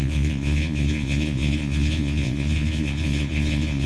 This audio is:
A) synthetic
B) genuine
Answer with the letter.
A